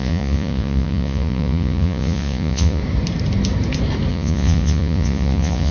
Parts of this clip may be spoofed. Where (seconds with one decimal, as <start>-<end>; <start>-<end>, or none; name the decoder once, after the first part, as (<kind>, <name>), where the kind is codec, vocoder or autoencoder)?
0.0-2.8 (vocoder, Vocos); 4.1-5.7